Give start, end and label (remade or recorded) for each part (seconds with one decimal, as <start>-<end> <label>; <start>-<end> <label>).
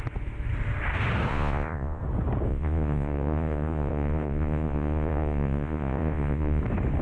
0.0-1.3 recorded; 1.3-2.0 remade; 2.0-2.5 recorded; 2.5-6.6 remade; 6.6-7.0 recorded